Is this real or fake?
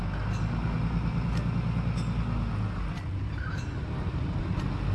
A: real